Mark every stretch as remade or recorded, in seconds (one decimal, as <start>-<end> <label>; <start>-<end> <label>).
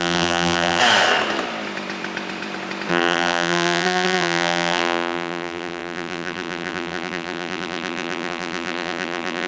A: 0.0-0.8 remade; 0.8-2.9 recorded; 2.9-9.5 remade